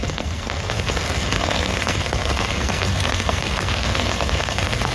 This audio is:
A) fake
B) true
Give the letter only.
A